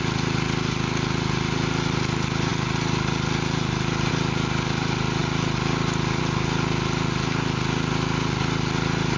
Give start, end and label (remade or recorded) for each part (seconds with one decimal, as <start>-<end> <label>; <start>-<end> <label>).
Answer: 0.0-9.2 recorded